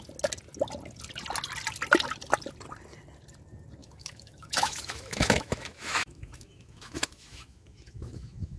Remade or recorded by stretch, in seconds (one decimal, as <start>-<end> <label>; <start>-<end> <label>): 0.0-3.8 recorded; 3.8-8.6 remade